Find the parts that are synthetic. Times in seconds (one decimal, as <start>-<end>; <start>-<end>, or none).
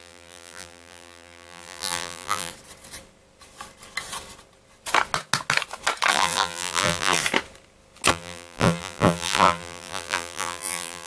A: 0.0-2.5; 6.1-7.2; 8.1-11.1